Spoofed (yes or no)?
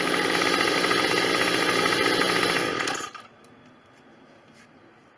no